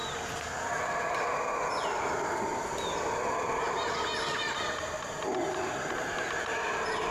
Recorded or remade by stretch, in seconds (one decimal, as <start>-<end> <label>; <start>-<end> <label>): 0.0-2.1 recorded; 2.1-7.1 remade